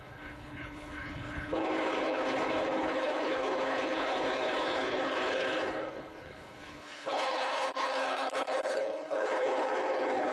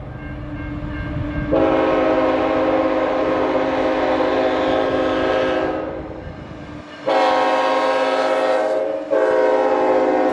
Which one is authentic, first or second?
second